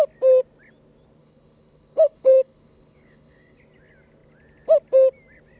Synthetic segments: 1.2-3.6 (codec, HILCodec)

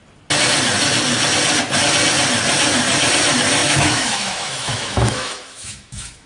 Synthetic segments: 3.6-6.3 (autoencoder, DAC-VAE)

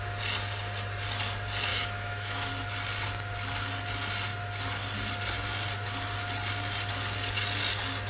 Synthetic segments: 1.7-2.5 (autoencoder, DAC-VAE)

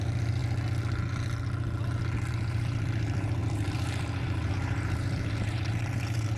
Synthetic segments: 0.0-0.4 (vocoder, BigVGAN v2); 2.3-6.4

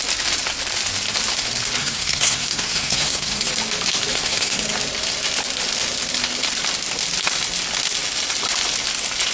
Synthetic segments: 1.8-3.5 (codec, SNAC); 4.1-4.6